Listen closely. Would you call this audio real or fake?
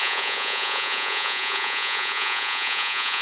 fake